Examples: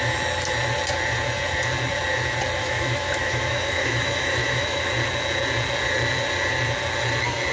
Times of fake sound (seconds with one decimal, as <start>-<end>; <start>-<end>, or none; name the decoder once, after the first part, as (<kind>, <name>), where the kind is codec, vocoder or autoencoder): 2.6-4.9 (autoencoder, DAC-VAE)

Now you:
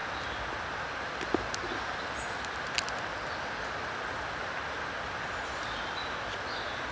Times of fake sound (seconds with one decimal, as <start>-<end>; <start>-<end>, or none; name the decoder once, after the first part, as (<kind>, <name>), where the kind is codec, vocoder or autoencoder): none

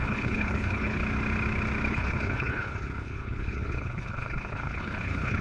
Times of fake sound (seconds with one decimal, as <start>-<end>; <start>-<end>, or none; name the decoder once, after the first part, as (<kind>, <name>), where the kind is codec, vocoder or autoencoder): 0.0-1.0 (codec, HILCodec); 1.9-5.4

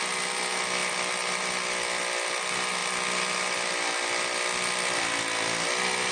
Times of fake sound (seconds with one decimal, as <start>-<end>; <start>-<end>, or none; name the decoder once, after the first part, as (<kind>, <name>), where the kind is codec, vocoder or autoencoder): none

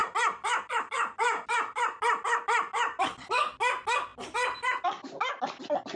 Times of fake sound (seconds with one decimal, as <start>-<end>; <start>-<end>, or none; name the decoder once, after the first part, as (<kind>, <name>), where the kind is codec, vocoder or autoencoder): none

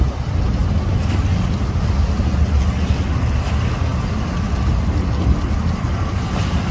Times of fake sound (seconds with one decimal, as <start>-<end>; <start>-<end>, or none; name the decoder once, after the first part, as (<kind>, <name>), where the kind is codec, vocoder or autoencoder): none

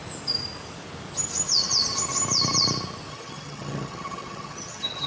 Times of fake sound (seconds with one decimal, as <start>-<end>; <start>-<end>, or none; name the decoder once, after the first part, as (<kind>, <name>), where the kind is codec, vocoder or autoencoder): 3.1-5.1 (vocoder, HiFi-GAN)